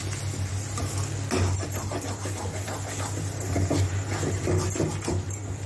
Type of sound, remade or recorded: recorded